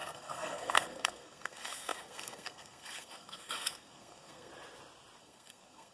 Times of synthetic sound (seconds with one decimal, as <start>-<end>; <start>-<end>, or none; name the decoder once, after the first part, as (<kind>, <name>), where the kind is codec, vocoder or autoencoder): 0.0-4.5 (codec, SNAC); 5.2-5.9